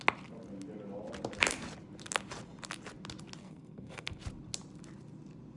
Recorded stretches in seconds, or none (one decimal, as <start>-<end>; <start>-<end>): 0.0-3.4; 4.2-5.6